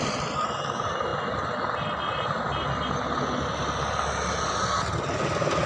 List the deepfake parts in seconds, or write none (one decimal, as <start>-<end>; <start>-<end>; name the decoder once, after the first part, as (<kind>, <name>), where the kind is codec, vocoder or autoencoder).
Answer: none